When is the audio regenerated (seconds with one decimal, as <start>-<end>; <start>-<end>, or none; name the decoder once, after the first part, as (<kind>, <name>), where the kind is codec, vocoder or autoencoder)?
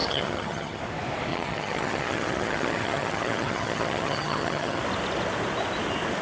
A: 0.0-0.8 (vocoder, HiFi-GAN); 1.3-4.8